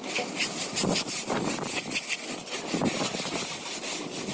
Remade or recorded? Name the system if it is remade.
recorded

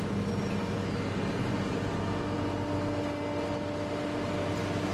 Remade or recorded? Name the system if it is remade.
recorded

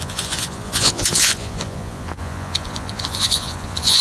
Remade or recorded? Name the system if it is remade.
remade, vocoder, Vocos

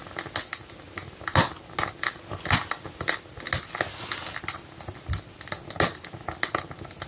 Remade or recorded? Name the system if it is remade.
recorded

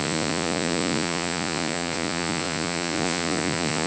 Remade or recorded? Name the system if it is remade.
remade, vocoder, Vocos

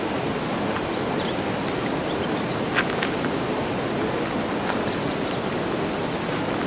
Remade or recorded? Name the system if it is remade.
recorded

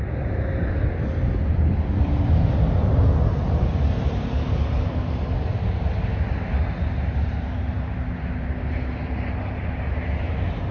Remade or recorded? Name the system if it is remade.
recorded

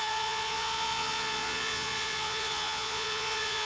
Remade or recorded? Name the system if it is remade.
remade, vocoder, Vocos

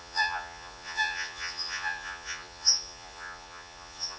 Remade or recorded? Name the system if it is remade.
remade, vocoder, Vocos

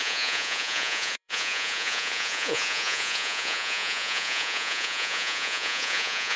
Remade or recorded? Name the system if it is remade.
remade, vocoder, Vocos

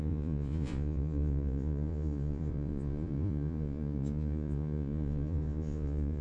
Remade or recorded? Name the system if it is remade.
remade, vocoder, Vocos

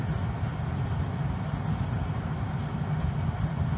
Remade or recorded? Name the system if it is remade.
recorded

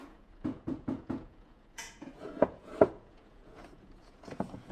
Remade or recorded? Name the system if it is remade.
remade, vocoder, Vocos